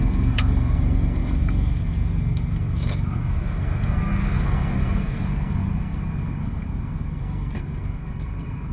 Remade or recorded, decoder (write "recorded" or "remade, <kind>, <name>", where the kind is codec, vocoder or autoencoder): remade, codec, SNAC